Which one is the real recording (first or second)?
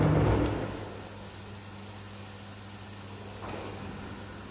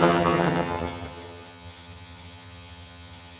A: first